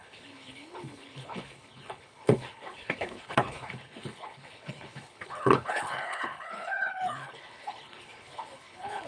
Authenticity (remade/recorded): remade